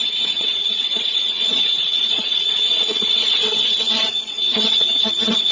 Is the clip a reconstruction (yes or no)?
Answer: yes